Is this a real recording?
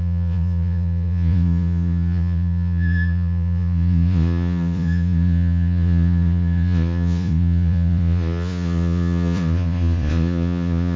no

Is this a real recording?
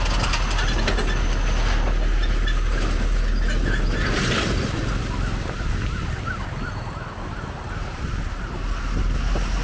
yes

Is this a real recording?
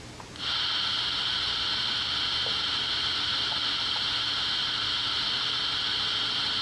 yes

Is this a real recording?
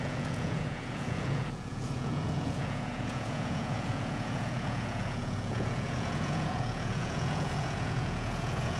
no